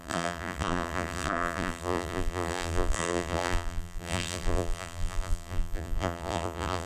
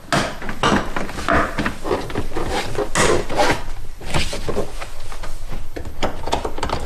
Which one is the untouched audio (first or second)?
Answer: second